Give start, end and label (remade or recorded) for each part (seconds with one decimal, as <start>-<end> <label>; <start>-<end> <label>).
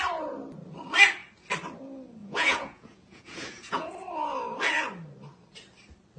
0.0-2.2 recorded; 2.2-3.9 remade; 3.9-6.2 recorded